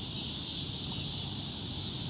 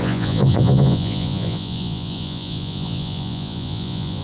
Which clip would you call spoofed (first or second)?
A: second